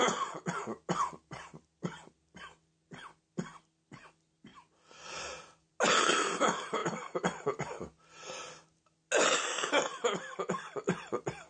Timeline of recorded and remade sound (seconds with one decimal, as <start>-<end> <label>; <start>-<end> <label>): 0.0-11.5 recorded